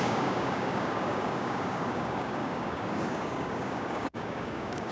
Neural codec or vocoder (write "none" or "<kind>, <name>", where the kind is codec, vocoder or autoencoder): codec, DAC